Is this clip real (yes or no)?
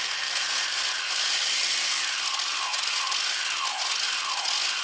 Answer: yes